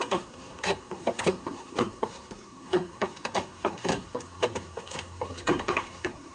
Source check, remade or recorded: remade